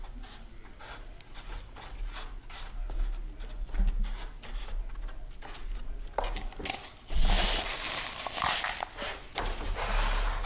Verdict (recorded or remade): recorded